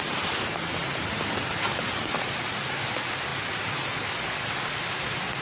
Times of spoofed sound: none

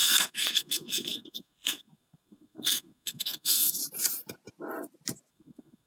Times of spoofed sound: 0.0-3.8 (codec, SNAC); 5.3-5.9

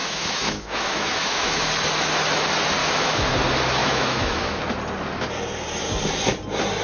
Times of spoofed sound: 0.0-1.7 (autoencoder, DAC-VAE); 2.8-3.3; 3.8-4.6

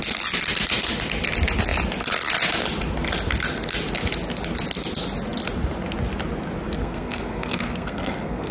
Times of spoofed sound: 6.8-8.5 (codec, SNAC)

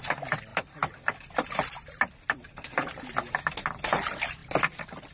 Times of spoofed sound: 0.5-3.3 (vocoder, BigVGAN v2); 4.4-5.1